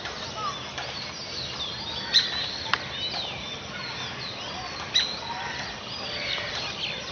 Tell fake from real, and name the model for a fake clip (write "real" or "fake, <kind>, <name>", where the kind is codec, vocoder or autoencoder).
real